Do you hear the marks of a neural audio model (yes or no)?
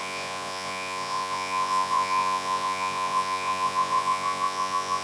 yes